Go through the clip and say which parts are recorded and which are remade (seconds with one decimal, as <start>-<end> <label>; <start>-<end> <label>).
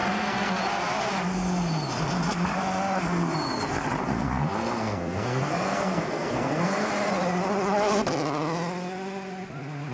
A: 0.0-0.6 remade; 0.6-4.0 recorded; 4.0-6.9 remade; 6.9-9.9 recorded